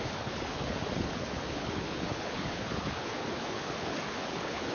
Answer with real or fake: fake